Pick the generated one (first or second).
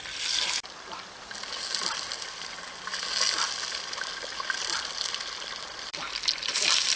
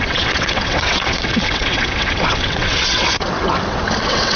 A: second